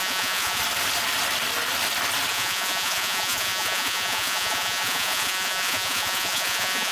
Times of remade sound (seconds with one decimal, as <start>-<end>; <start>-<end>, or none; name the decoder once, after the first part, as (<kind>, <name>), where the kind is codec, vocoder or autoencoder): 0.0-0.6 (vocoder, Vocos); 2.3-6.9